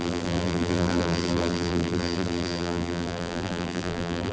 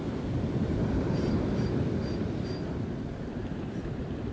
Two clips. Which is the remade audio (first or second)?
first